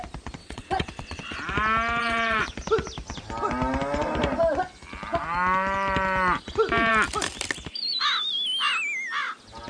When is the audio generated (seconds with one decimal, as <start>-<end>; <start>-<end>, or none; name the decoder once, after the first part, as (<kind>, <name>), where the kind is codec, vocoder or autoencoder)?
0.4-1.4 (vocoder, WaveNeXt); 2.0-2.5